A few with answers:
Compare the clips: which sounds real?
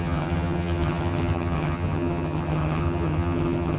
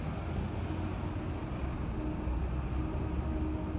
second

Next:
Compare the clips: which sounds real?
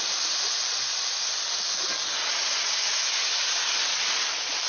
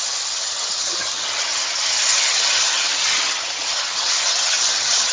first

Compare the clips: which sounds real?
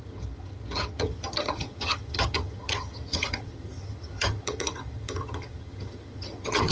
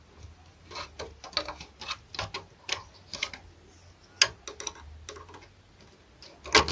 second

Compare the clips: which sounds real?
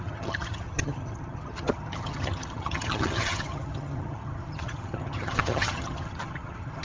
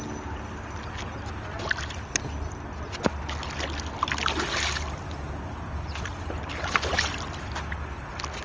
second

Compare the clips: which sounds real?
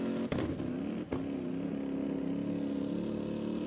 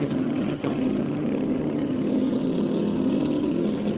first